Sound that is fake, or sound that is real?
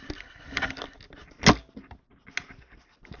real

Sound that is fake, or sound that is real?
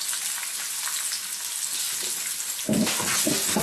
real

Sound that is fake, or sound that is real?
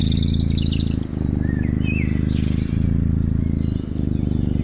real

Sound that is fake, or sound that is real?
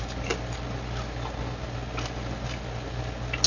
real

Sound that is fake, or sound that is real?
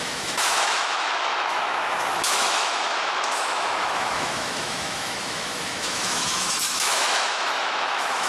fake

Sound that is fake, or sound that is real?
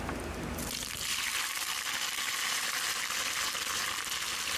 real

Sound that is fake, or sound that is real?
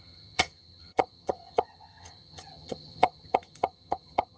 fake